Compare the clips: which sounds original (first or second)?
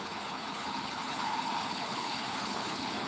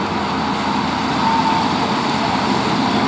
second